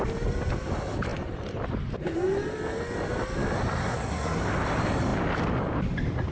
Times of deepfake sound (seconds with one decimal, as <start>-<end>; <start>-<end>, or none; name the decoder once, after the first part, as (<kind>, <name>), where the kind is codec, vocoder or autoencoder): 3.8-4.4 (codec, SNAC)